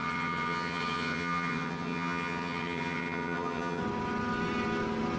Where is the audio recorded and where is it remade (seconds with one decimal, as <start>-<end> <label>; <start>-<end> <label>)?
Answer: 0.0-3.8 remade; 3.8-5.2 recorded